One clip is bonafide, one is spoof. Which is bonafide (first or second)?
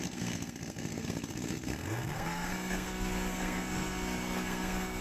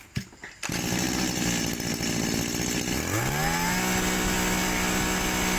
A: second